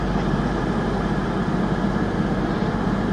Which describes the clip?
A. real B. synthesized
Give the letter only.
A